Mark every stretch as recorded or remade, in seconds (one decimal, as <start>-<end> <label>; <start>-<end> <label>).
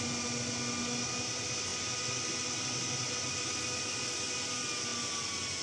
0.0-5.6 recorded